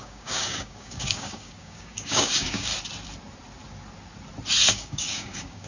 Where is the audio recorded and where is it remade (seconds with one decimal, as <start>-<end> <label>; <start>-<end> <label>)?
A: 0.0-2.7 remade; 2.7-4.7 recorded; 4.7-5.7 remade

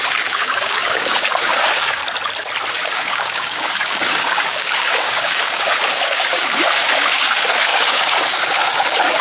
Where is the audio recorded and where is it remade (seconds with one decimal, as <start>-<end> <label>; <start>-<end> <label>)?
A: 0.0-2.0 remade; 2.0-2.7 recorded; 2.7-9.2 remade

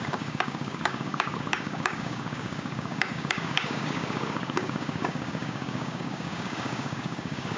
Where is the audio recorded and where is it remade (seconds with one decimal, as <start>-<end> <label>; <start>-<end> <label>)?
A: 0.0-7.6 remade